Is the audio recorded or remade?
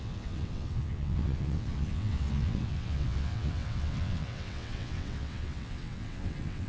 remade